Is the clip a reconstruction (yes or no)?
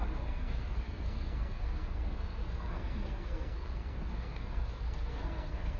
yes